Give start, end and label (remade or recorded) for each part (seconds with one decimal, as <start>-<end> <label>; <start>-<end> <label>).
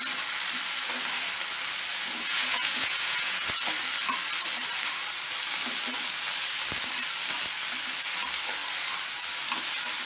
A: 0.0-1.9 recorded; 1.9-3.5 remade; 3.5-10.1 recorded